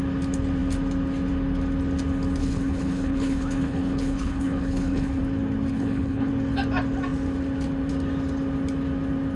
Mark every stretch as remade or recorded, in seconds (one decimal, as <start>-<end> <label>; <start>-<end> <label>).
0.0-2.4 recorded; 2.4-5.2 remade; 5.2-5.7 recorded; 5.7-6.3 remade; 6.3-9.4 recorded